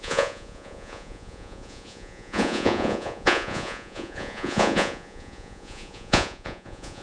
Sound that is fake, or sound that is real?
fake